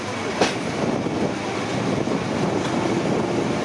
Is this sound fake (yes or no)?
no